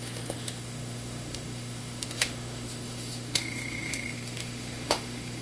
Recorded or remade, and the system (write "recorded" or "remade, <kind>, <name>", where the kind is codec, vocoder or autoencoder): remade, autoencoder, DAC-VAE